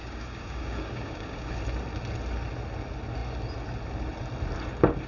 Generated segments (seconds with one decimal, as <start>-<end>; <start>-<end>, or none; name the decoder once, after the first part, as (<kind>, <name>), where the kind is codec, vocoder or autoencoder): 0.0-1.6 (codec, DAC)